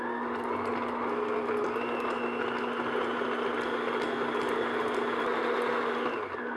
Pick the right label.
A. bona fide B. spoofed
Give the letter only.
A